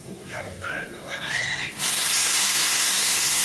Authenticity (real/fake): fake